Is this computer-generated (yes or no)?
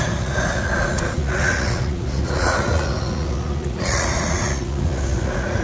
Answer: yes